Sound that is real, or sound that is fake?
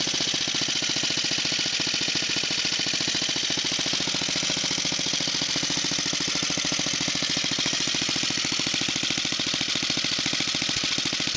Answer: real